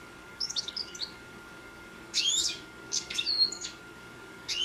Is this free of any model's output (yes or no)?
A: no